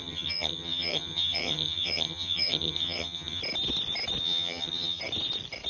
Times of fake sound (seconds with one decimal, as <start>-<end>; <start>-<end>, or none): 0.0-3.4; 4.2-5.0